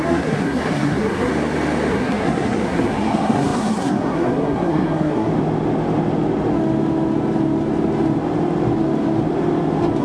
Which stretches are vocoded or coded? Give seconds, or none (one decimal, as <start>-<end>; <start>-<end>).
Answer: 0.0-1.3; 1.9-5.3